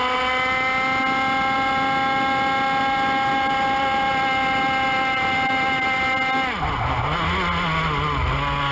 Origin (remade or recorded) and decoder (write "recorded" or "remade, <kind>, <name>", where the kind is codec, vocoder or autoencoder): recorded